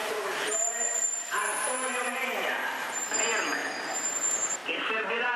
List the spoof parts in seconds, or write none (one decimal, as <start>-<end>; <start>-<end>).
0.0-3.0